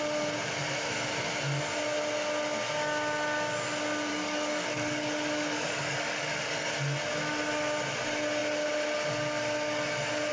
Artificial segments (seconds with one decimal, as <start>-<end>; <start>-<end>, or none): 4.1-6.7